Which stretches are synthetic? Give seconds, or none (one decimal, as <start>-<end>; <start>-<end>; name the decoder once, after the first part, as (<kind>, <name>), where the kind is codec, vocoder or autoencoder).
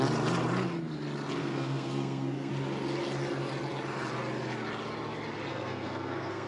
1.4-2.5 (codec, SNAC); 5.5-6.5